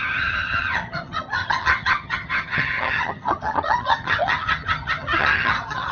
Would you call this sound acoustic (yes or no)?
no